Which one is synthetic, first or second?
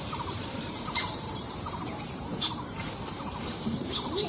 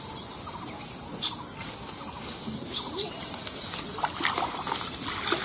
first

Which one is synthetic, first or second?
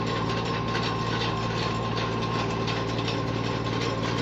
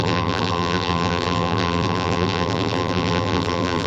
second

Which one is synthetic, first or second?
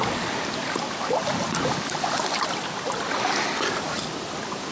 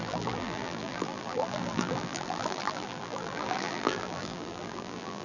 second